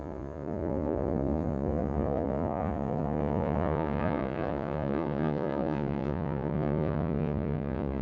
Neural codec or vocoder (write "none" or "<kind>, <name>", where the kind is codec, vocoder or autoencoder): vocoder, Vocos